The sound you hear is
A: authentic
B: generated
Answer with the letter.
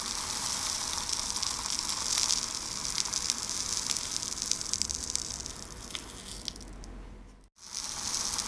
A